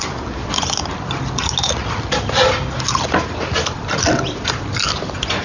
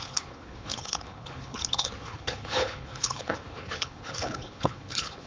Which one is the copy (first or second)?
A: second